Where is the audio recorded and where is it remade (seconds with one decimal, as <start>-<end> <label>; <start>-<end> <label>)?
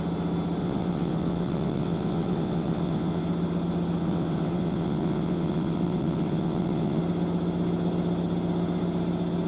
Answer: 0.0-0.6 recorded; 0.6-3.2 remade; 3.2-4.0 recorded; 4.0-7.0 remade; 7.0-9.5 recorded